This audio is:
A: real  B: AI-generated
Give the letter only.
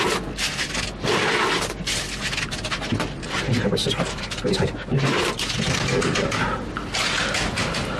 A